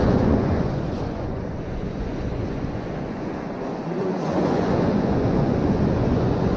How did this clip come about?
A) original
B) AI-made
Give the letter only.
B